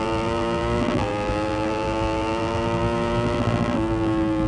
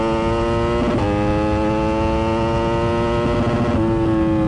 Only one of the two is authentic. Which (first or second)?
second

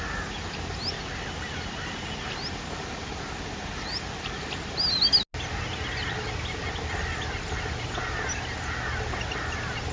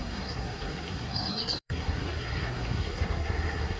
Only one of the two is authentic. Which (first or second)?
first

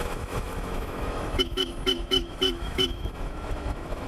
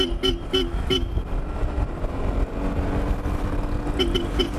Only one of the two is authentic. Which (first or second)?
second